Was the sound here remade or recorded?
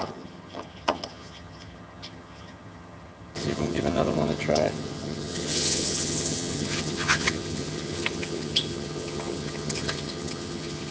remade